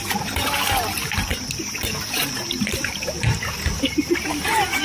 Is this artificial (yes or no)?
yes